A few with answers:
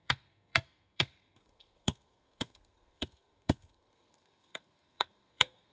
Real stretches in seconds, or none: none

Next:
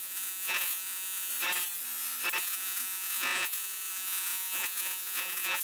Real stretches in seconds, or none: 1.3-2.4